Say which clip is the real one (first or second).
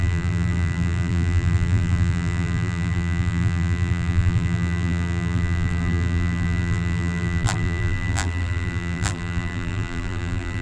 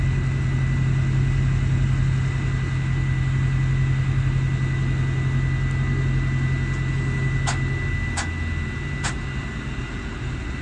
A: second